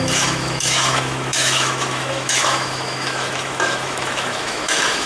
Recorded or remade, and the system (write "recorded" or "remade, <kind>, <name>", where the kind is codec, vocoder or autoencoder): remade, autoencoder, DAC-VAE